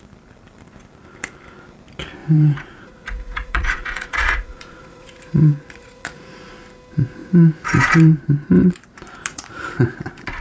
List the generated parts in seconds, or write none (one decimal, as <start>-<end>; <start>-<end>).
2.2-6.5; 7.2-8.2; 9.3-10.4